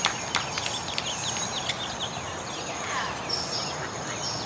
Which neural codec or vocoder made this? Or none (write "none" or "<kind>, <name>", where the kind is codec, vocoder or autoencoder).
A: none